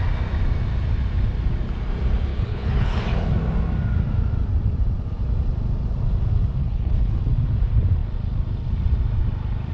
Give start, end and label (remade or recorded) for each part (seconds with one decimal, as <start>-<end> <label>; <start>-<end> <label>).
0.0-2.3 recorded; 2.3-3.0 remade; 3.0-6.6 recorded; 6.6-7.2 remade; 7.2-9.7 recorded